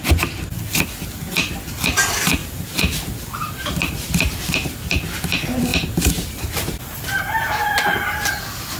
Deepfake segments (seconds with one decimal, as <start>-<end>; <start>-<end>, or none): 2.4-4.9; 5.7-8.4

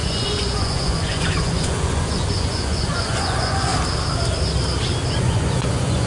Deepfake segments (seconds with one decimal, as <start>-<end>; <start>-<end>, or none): 0.0-3.7; 5.2-6.1